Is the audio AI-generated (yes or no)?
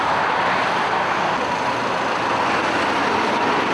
no